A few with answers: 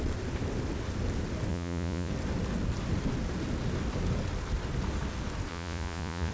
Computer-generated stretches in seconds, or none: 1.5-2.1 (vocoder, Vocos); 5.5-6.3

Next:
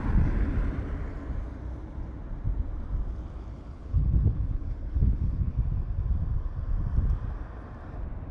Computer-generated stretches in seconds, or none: 3.5-5.5 (codec, HILCodec)

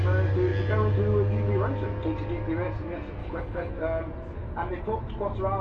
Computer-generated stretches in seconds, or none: 3.2-3.7 (codec, HILCodec)

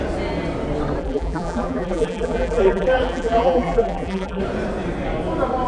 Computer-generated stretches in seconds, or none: 1.0-4.4 (vocoder, BigVGAN v2)

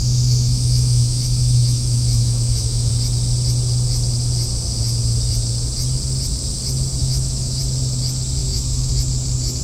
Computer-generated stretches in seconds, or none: 0.0-2.9 (autoencoder, DAC-VAE); 7.0-7.6; 8.4-8.9

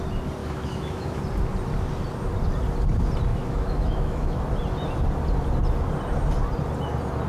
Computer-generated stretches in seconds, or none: 0.4-1.2 (autoencoder, DAC-VAE); 3.3-4.4

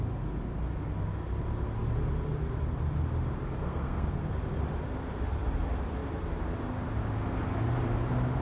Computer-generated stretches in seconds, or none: 3.6-4.3 (codec, SNAC)